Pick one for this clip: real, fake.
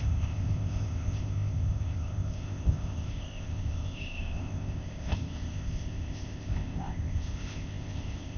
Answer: fake